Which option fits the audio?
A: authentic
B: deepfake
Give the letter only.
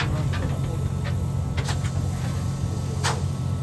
A